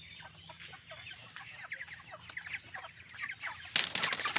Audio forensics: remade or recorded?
recorded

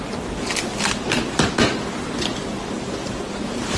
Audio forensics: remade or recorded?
recorded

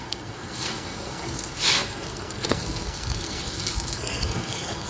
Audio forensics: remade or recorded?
remade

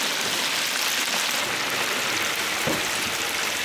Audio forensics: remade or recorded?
recorded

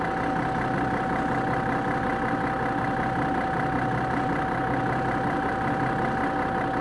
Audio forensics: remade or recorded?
recorded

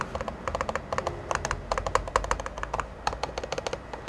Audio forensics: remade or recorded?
recorded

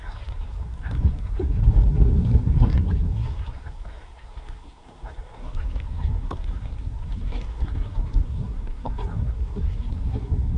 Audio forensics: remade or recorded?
remade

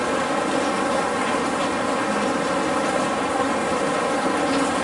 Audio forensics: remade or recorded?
recorded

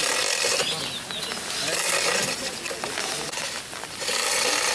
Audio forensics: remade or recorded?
recorded